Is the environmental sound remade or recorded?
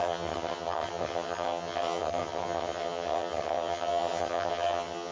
remade